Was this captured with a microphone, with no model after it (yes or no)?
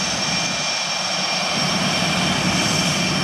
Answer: yes